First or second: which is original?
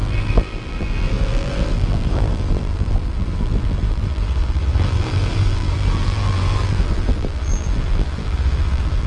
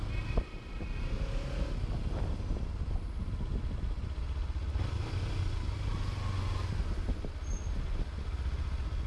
second